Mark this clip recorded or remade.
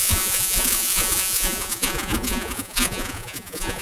remade